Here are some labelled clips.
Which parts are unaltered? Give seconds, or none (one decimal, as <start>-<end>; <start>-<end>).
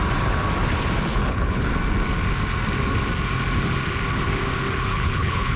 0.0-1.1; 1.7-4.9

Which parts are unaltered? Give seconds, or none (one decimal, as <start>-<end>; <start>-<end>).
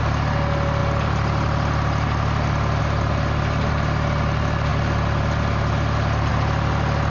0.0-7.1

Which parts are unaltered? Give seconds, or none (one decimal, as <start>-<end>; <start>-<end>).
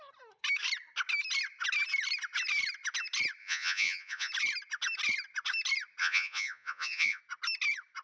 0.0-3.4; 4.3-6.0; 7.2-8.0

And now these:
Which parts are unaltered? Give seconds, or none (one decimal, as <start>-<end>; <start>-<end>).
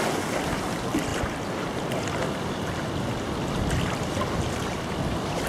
0.0-5.5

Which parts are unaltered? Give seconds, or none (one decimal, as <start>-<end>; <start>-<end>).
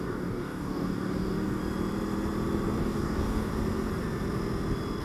1.6-2.8; 3.5-5.0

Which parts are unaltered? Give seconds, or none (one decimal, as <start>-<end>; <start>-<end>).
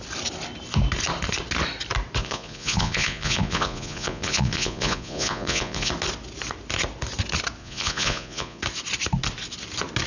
0.0-2.2; 5.9-7.6; 8.6-10.1